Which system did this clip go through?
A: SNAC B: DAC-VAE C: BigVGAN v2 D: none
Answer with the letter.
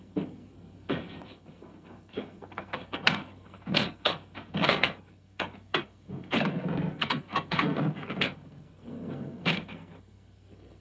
A